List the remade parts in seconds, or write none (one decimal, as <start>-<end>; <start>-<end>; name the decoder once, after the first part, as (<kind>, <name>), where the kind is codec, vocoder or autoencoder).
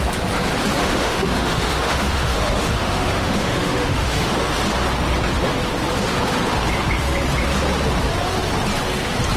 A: 0.8-4.3 (autoencoder, DAC-VAE)